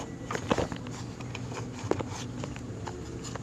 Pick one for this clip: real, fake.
real